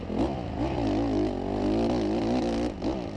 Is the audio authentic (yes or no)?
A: yes